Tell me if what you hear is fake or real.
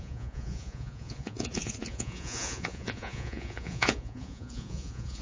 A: fake